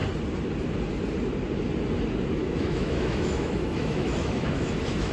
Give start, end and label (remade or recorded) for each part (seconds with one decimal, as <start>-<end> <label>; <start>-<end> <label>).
0.0-2.3 recorded; 2.3-5.1 remade